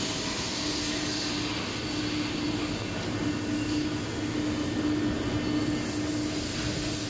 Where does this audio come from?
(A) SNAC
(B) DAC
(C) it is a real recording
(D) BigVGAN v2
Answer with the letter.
C